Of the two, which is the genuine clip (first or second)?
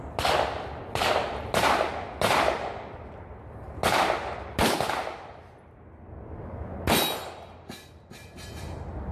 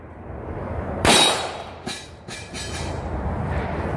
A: first